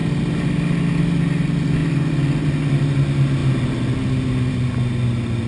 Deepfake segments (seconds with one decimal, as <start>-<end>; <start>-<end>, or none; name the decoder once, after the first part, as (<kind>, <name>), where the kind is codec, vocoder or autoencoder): none